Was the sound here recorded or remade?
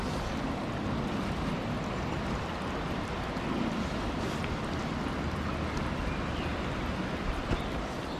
recorded